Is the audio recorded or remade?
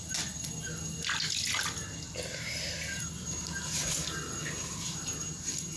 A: recorded